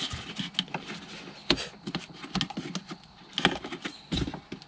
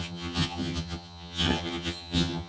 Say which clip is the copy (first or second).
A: second